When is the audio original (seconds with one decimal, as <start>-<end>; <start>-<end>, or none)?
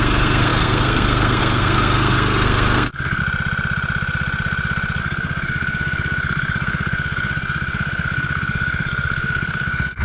3.2-5.0